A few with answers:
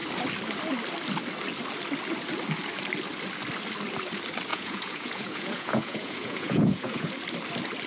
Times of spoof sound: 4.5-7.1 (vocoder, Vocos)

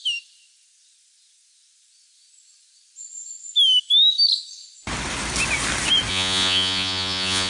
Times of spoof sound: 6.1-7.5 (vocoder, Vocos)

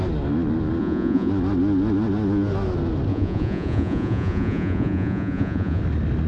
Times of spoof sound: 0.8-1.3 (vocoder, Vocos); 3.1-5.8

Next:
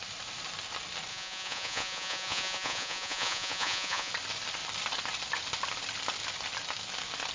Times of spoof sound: 1.1-4.1 (vocoder, Vocos)

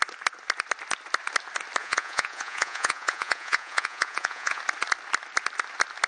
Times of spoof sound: 1.8-4.6 (vocoder, Vocos)